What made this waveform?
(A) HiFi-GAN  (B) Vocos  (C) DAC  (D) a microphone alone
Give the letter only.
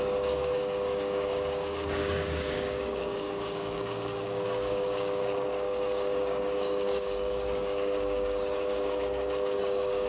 C